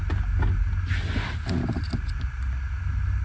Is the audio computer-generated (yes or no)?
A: no